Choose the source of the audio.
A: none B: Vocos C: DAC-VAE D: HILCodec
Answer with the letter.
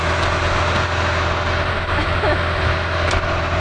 A